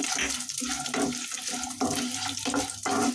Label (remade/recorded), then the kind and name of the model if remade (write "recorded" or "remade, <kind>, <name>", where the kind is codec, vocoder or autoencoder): remade, vocoder, BigVGAN v2